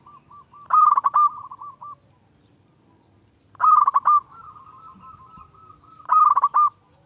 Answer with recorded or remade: recorded